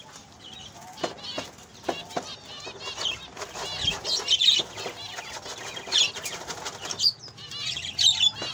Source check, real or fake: real